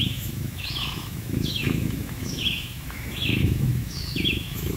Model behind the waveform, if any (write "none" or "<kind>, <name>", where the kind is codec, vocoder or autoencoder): autoencoder, DAC-VAE